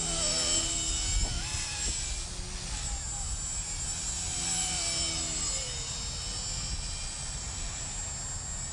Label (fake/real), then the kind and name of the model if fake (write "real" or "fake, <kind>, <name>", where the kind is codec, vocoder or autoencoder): real